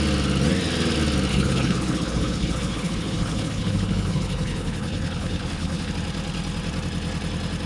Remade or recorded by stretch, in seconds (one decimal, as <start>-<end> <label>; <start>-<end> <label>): 0.0-1.3 recorded; 1.3-5.9 remade; 5.9-7.7 recorded